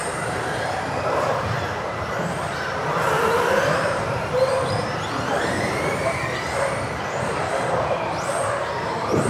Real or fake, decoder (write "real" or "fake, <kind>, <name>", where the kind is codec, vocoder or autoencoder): fake, vocoder, BigVGAN v2